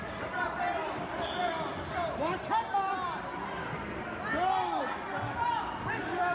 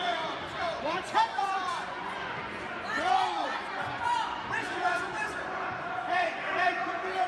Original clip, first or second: first